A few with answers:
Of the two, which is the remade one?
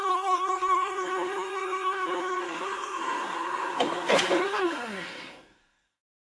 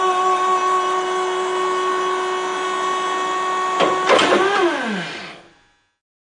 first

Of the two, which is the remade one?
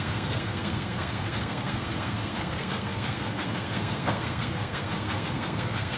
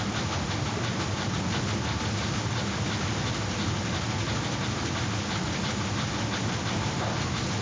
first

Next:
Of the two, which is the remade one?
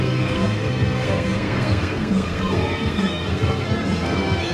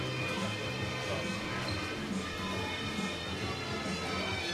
first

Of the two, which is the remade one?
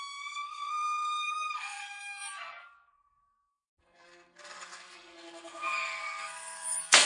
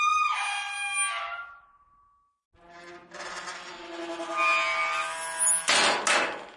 first